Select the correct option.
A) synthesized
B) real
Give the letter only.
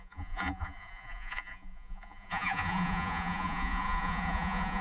A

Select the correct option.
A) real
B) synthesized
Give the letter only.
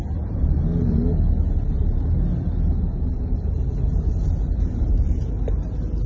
A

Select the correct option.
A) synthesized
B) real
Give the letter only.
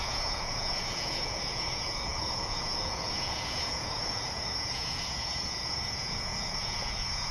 A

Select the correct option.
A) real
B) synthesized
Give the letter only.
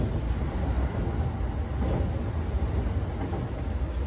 A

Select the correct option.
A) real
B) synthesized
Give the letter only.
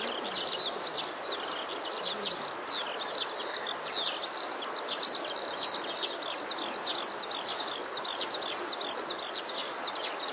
A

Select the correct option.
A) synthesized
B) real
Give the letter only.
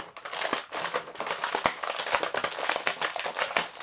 B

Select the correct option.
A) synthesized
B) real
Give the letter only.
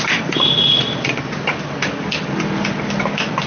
B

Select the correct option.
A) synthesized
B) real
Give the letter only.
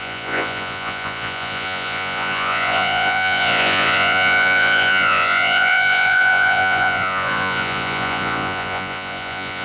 A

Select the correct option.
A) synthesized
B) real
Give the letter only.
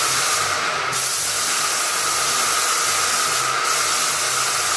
B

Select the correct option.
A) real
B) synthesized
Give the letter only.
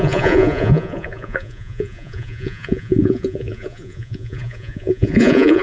B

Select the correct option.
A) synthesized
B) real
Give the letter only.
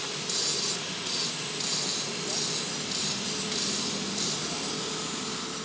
B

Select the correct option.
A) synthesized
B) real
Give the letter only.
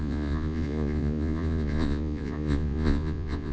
A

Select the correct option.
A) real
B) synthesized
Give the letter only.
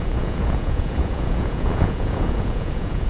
B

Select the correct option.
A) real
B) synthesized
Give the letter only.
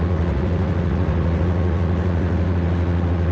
B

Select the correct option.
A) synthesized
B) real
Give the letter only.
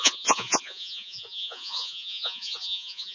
A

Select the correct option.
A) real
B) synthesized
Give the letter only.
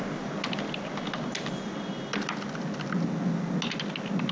A